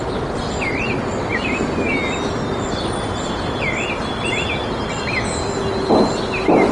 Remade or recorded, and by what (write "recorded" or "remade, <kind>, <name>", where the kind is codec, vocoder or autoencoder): recorded